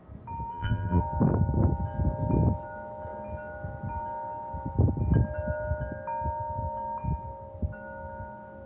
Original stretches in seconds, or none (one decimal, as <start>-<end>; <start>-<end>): 0.0-0.5; 1.0-8.7